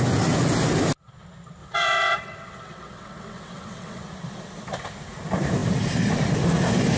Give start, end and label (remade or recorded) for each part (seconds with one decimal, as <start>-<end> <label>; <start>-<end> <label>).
0.0-1.6 recorded; 1.6-4.0 remade; 4.0-7.0 recorded